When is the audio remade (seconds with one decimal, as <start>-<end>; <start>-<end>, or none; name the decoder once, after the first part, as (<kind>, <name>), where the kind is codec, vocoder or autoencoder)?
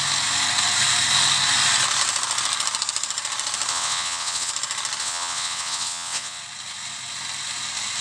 3.7-4.5 (vocoder, WaveNeXt); 5.0-6.4